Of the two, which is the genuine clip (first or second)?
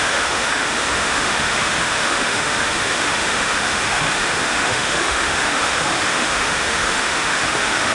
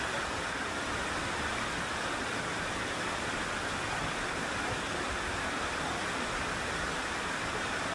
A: second